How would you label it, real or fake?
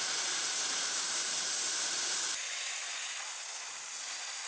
real